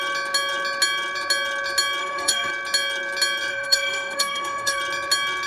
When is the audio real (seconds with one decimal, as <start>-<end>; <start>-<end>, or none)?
0.0-2.0; 2.5-3.5; 4.8-5.5